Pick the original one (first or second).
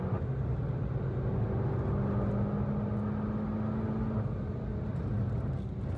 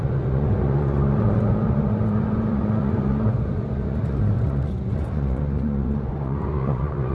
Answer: first